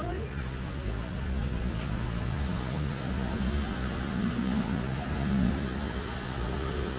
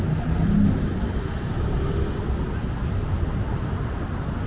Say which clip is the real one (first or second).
second